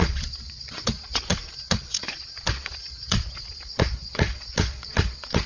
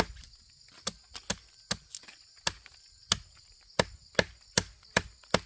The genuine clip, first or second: second